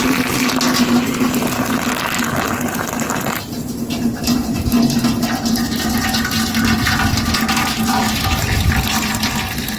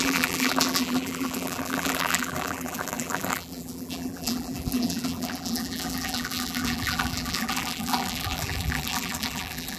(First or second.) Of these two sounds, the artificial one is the second